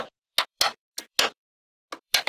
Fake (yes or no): yes